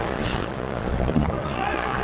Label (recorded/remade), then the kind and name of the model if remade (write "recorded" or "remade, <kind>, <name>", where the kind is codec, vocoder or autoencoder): remade, vocoder, Vocos